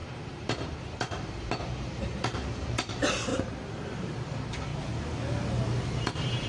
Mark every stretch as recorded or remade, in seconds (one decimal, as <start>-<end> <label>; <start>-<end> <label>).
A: 0.0-4.7 remade; 4.7-6.0 recorded; 6.0-6.5 remade